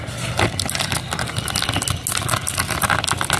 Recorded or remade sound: recorded